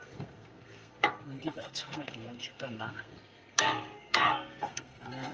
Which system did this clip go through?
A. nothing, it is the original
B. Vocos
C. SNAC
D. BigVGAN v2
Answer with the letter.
C